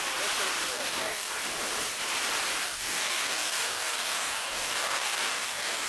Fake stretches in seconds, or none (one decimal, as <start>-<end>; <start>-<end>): 0.7-1.3; 2.6-5.9